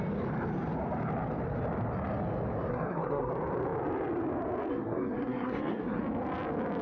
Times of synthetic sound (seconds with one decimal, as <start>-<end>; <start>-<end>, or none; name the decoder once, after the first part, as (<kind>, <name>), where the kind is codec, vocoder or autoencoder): 2.7-3.3 (codec, SNAC); 4.7-6.0